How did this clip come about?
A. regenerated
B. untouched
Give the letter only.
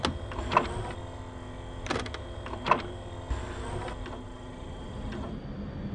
B